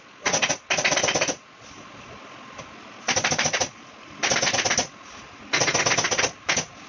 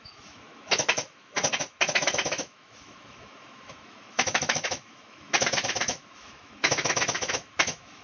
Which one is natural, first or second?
first